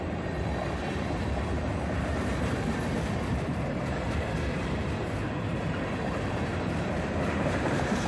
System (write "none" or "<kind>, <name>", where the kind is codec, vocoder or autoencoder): vocoder, BigVGAN v2